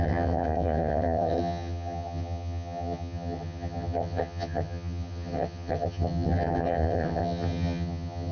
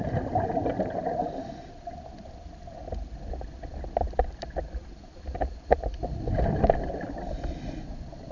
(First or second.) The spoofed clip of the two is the first